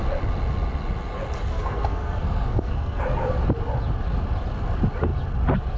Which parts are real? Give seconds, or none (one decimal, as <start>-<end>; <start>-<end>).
0.0-1.5; 3.0-5.8

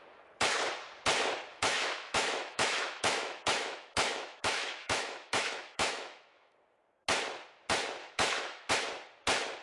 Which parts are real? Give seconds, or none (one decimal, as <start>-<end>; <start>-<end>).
0.0-1.5; 6.5-8.0; 8.7-9.6

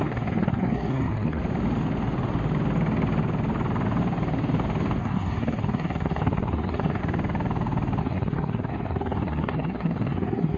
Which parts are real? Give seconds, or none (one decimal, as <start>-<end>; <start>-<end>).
1.4-5.0; 7.0-8.0

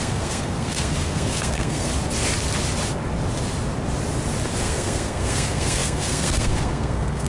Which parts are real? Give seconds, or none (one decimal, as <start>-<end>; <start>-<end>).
1.9-4.6